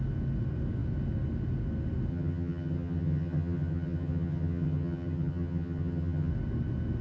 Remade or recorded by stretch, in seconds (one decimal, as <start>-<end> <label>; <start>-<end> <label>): 0.0-2.1 recorded; 2.1-6.3 remade; 6.3-7.0 recorded